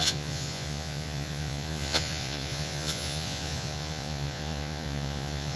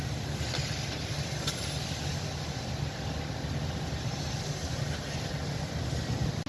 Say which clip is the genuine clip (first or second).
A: second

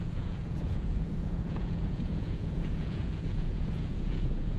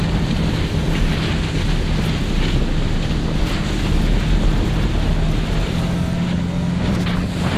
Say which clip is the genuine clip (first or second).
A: second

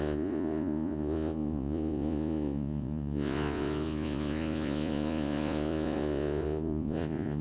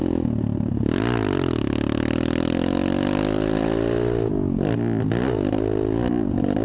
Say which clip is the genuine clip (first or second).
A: second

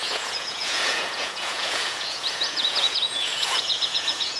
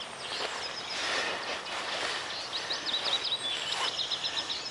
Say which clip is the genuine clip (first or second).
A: second